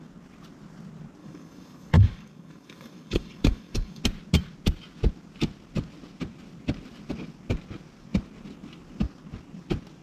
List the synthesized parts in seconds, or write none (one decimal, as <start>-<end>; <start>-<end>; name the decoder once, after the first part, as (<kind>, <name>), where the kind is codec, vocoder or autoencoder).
1.2-4.0 (codec, DAC)